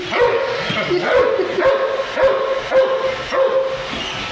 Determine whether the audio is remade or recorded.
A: recorded